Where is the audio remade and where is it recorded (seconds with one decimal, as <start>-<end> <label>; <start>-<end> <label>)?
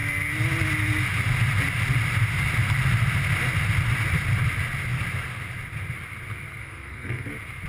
0.0-6.6 recorded; 6.6-7.3 remade; 7.3-7.7 recorded